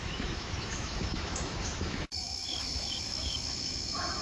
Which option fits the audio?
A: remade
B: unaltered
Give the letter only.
A